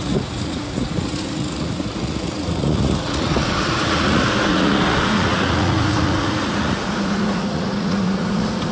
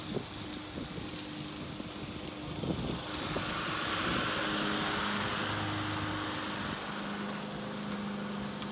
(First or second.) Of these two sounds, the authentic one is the second